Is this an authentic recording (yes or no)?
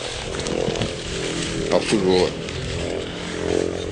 no